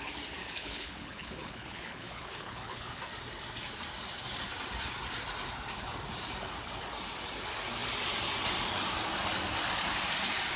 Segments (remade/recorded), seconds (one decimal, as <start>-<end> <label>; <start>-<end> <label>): 0.0-0.4 recorded; 0.4-3.0 remade; 3.0-10.6 recorded